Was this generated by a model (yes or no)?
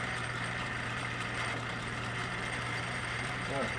yes